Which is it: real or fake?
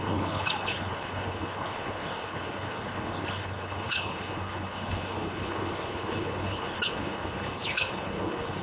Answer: fake